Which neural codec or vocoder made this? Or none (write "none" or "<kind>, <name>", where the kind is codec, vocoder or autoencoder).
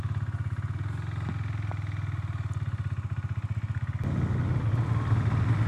none